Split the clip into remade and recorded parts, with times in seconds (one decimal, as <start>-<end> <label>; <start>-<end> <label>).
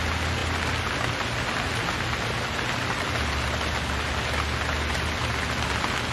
0.0-6.1 recorded